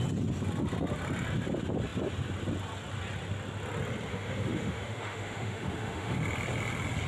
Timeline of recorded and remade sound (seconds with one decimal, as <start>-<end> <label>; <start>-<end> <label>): 0.0-4.1 recorded; 4.1-6.2 remade; 6.2-7.1 recorded

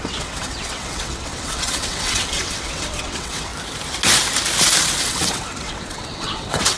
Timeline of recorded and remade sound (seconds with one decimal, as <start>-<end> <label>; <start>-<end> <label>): 0.0-3.5 remade; 3.5-5.0 recorded; 5.0-6.8 remade

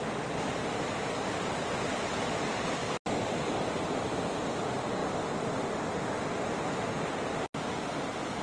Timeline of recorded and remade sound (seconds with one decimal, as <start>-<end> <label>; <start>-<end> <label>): 0.0-8.4 recorded